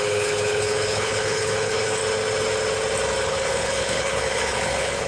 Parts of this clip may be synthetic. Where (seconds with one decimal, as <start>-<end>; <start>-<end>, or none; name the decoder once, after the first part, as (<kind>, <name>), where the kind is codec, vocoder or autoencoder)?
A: 0.0-2.0 (codec, HILCodec); 3.2-5.1